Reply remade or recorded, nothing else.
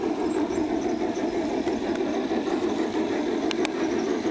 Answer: recorded